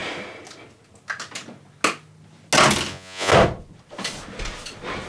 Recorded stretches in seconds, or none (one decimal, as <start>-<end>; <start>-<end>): 0.0-2.9; 3.3-5.1